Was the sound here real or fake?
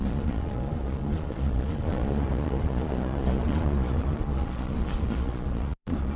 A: fake